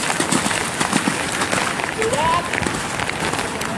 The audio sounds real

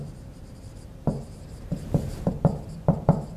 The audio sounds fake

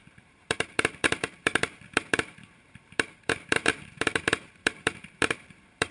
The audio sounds fake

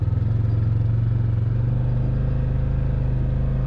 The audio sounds real